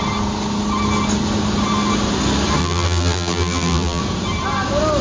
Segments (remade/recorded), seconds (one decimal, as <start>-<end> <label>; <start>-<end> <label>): 0.0-2.6 recorded; 2.6-4.0 remade; 4.0-5.0 recorded